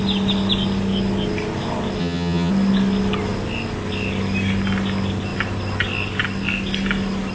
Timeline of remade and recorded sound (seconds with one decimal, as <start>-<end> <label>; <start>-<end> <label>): 0.0-2.0 recorded; 2.0-2.5 remade; 2.5-7.3 recorded